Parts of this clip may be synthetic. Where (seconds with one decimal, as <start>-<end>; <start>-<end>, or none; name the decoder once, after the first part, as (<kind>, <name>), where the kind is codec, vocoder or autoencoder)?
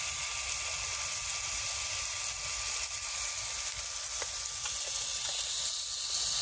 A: none